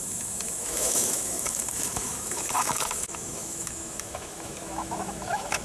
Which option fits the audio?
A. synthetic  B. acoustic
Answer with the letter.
A